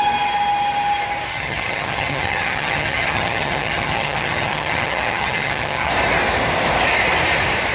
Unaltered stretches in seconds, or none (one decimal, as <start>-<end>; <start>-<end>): 0.0-1.3; 5.9-7.7